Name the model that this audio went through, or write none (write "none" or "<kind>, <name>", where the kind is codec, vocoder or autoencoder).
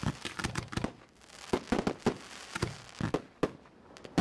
none